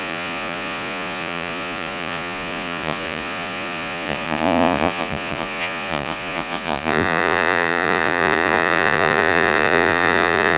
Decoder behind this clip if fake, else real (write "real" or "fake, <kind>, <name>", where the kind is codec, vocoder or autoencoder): fake, vocoder, Vocos